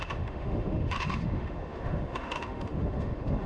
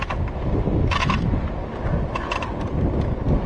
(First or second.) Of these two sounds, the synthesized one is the first